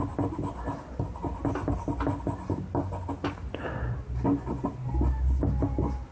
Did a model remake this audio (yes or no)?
no